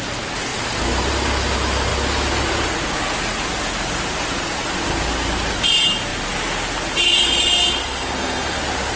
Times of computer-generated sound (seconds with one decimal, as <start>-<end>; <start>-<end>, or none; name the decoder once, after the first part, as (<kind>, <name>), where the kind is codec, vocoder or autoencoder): 7.8-8.6 (codec, SNAC)